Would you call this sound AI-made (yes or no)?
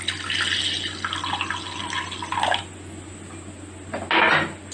no